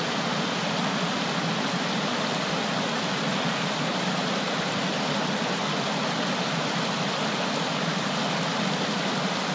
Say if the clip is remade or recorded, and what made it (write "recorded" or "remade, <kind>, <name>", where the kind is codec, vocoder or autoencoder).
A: recorded